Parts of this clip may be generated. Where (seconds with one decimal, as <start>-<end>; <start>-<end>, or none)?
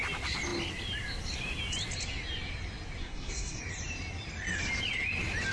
3.0-3.6